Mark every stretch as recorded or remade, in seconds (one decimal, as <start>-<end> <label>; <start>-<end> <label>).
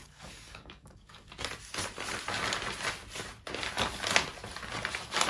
0.0-1.3 remade; 1.3-5.3 recorded